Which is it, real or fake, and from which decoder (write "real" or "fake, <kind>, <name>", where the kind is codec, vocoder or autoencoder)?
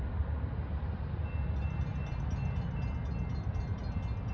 real